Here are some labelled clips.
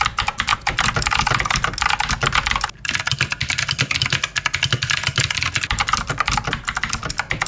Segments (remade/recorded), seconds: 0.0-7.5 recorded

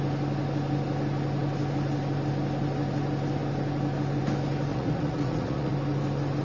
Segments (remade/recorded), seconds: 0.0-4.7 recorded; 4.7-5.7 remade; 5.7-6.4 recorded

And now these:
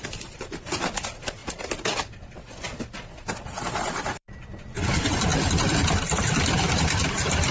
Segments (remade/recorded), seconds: 0.0-1.4 remade; 1.4-3.7 recorded; 3.7-7.5 remade

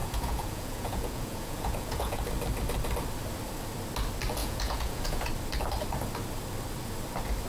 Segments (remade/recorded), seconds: 0.0-2.2 remade; 2.2-4.4 recorded; 4.4-5.3 remade; 5.3-7.5 recorded

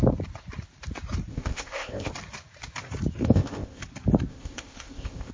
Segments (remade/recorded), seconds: 0.0-1.3 recorded; 1.3-2.1 remade; 2.1-3.2 recorded; 3.2-3.8 remade; 3.8-4.3 recorded; 4.3-5.3 remade